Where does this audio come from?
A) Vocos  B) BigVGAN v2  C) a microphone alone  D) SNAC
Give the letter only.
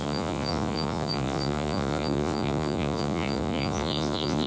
A